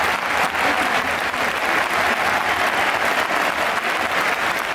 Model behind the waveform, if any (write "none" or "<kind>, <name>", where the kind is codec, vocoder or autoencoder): none